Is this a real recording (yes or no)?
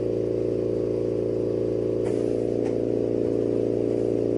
yes